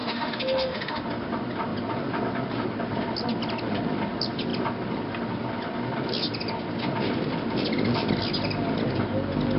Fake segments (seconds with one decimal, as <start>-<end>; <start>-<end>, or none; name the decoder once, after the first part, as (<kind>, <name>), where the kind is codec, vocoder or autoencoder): 0.0-1.0 (autoencoder, DAC-VAE)